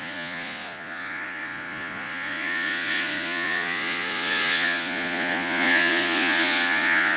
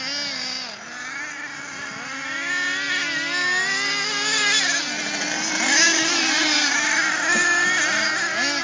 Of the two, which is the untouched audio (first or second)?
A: second